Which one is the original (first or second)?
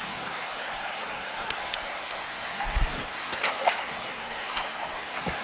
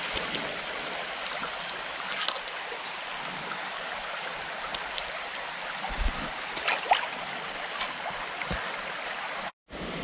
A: second